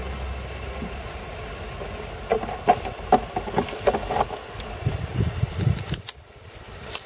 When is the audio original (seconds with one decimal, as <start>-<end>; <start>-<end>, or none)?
0.0-7.1